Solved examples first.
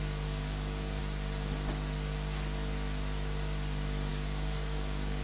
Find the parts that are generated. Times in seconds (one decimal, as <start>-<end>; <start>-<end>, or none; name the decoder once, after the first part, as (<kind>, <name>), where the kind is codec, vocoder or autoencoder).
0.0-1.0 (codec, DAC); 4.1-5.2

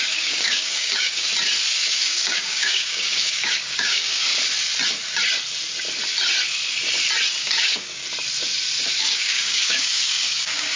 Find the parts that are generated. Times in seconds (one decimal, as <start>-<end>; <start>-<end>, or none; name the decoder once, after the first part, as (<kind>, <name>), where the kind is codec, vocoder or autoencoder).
0.0-1.3 (codec, DAC); 1.9-4.3; 7.4-8.0; 9.0-10.8

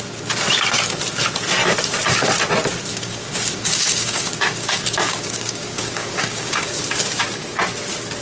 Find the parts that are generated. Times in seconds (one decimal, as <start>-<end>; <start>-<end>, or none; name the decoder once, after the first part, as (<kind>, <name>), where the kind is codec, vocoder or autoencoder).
2.9-6.8 (codec, DAC)

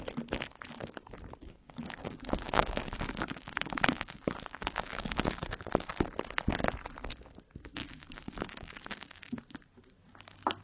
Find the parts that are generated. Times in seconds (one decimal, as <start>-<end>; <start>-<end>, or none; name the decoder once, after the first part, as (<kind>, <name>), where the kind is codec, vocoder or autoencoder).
1.4-5.9 (codec, DAC); 7.8-9.4

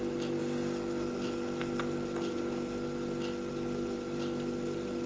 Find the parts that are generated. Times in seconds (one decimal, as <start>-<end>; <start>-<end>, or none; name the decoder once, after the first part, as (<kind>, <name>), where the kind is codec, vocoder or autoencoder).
none

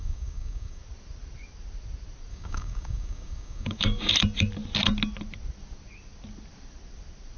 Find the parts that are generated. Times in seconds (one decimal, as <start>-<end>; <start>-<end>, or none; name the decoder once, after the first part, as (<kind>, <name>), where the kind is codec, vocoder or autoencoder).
0.0-0.8 (codec, DAC); 2.3-4.1

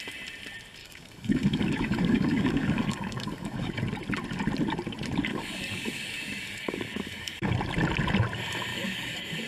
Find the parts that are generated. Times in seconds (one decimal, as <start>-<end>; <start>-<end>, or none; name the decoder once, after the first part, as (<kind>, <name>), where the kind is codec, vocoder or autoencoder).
0.8-3.8 (codec, DAC); 5.3-7.5; 8.7-9.5